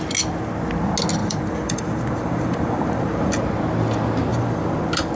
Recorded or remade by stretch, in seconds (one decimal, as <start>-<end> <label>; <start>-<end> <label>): 0.0-1.2 recorded; 1.2-3.4 remade; 3.4-4.3 recorded; 4.3-4.8 remade; 4.8-5.2 recorded